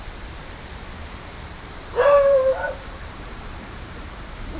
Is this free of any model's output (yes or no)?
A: no